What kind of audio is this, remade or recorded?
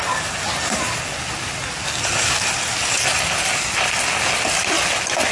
recorded